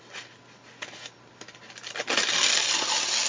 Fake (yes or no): no